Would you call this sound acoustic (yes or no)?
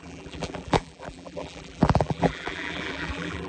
no